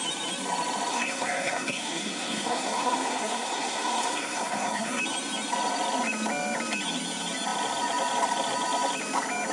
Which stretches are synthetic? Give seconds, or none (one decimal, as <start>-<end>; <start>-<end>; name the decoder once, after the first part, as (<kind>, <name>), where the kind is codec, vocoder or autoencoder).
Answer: 0.9-5.0 (codec, SNAC)